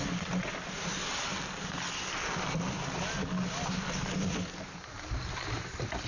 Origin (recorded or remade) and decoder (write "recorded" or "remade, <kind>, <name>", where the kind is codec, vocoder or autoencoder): recorded